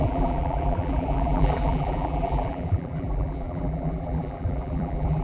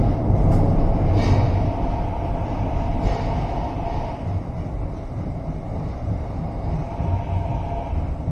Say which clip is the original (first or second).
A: second